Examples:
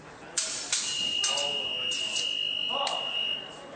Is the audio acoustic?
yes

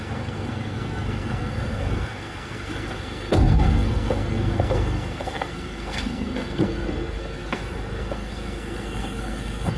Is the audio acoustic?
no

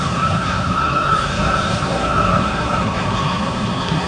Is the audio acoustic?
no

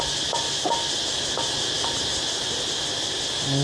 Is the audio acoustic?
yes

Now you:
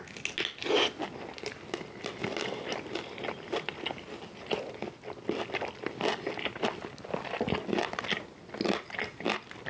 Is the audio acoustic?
yes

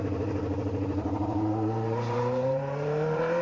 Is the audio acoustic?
no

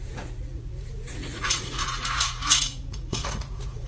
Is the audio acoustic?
no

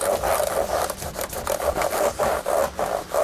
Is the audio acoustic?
yes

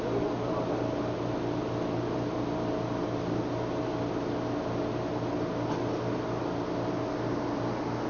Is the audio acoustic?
yes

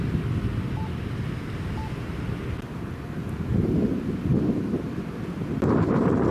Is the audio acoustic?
yes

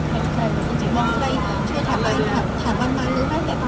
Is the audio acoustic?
yes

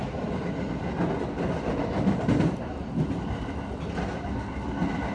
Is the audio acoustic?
yes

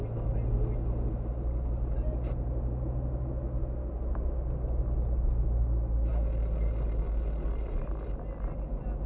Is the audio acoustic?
yes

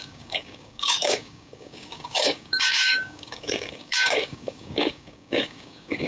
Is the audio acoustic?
no